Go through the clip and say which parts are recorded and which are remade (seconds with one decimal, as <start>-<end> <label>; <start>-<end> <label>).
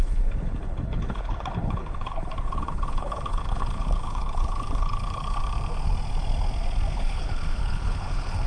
0.0-5.4 remade; 5.4-6.9 recorded; 6.9-8.5 remade